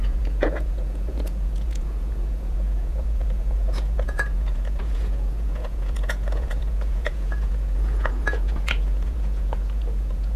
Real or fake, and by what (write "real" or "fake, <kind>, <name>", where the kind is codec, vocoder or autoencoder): fake, vocoder, Vocos